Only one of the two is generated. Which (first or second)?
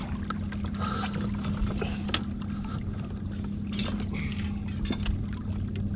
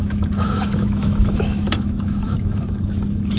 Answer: second